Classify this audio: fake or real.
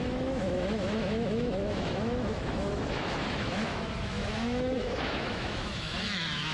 fake